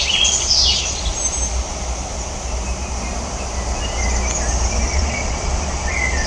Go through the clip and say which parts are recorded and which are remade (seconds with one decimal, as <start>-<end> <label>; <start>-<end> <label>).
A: 0.0-1.1 remade; 1.1-4.9 recorded; 4.9-6.3 remade